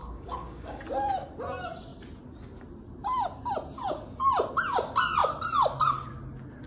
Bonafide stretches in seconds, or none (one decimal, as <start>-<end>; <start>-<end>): 0.8-6.7